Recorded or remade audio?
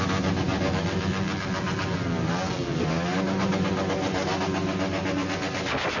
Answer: recorded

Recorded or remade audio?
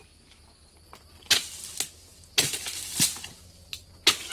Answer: recorded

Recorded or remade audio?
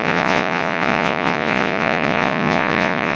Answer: remade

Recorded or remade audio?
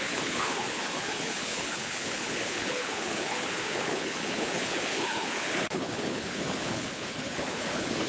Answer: remade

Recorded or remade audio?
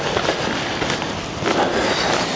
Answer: recorded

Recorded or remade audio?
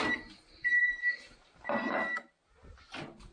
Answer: recorded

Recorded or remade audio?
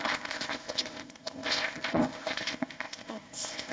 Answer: remade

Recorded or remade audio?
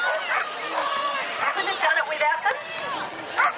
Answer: recorded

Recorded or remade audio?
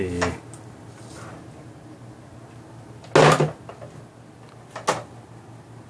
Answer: recorded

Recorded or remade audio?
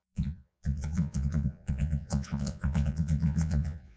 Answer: remade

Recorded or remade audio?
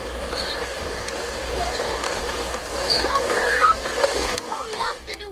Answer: remade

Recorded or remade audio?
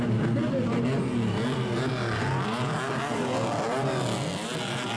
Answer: recorded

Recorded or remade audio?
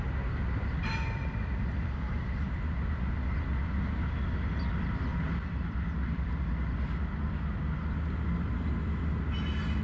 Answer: remade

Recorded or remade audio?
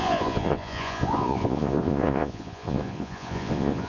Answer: remade